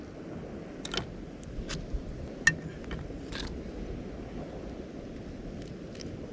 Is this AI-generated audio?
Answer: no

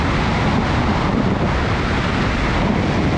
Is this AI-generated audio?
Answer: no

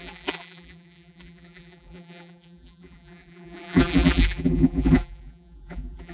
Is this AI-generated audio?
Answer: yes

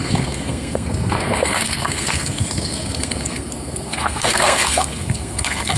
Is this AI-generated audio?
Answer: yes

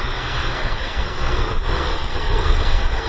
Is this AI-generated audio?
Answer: yes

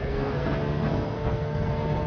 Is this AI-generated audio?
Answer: yes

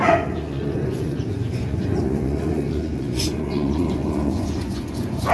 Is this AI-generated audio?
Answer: yes